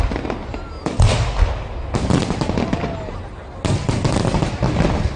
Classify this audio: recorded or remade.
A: recorded